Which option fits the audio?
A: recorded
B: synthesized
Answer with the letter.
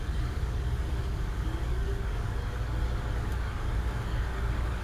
B